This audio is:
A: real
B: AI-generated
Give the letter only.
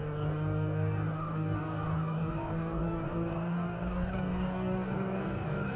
B